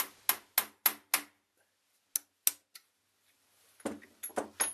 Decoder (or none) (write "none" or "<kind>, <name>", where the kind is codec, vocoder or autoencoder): none